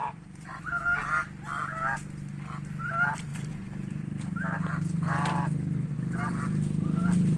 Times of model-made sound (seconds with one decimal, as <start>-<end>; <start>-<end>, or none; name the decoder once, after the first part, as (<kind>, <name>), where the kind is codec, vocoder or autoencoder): 0.0-0.6 (vocoder, BigVGAN v2); 3.3-5.1